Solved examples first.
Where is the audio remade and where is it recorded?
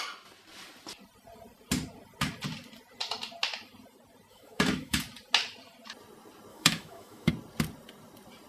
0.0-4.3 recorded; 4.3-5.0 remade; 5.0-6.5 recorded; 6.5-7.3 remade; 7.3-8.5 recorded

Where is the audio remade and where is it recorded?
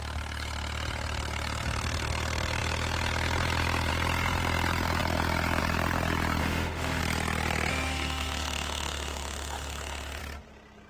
0.0-6.4 recorded; 6.4-7.0 remade; 7.0-7.7 recorded; 7.7-10.2 remade; 10.2-10.9 recorded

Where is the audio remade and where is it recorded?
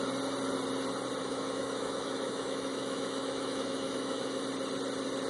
0.0-1.2 recorded; 1.2-4.4 remade; 4.4-5.3 recorded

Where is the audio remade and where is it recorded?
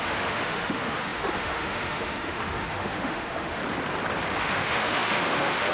0.0-3.6 remade; 3.6-4.4 recorded; 4.4-5.7 remade